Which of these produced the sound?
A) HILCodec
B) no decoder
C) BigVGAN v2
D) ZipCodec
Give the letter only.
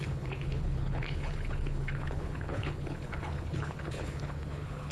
A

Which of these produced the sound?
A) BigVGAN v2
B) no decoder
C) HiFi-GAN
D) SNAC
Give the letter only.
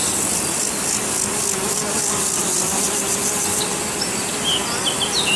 B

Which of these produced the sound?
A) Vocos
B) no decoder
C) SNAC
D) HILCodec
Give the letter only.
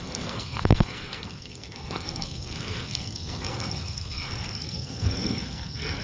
C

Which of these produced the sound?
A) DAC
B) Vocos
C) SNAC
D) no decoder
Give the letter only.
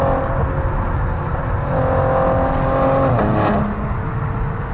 D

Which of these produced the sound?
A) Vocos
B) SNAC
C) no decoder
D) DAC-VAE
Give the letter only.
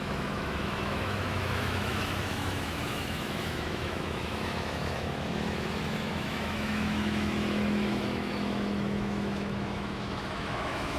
D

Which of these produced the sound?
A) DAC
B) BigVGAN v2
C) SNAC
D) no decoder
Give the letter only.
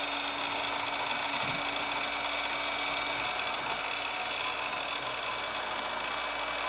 D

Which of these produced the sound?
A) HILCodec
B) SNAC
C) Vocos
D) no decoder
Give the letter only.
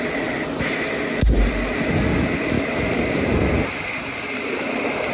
D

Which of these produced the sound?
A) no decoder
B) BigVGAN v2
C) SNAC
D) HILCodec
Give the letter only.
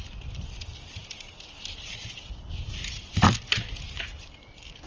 A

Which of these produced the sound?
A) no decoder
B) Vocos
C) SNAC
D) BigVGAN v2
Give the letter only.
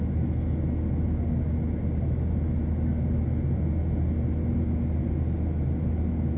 A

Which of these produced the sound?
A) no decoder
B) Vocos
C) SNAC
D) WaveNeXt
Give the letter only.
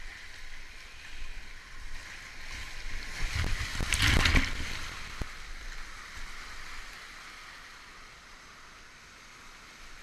A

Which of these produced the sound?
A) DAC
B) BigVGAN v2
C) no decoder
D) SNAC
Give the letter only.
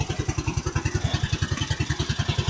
C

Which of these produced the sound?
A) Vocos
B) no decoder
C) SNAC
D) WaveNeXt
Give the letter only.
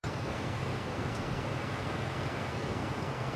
C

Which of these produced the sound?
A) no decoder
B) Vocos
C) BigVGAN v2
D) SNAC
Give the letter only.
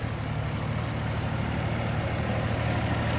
A